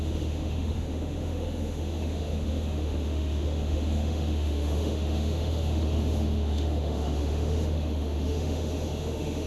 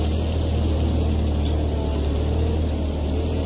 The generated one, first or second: first